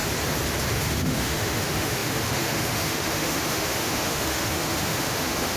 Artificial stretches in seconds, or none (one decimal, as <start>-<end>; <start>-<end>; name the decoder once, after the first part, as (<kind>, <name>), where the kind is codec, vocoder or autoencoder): 0.7-5.6 (autoencoder, DAC-VAE)